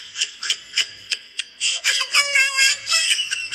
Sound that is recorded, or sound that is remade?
remade